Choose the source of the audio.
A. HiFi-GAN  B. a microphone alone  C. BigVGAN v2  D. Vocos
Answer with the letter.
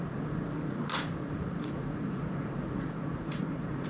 D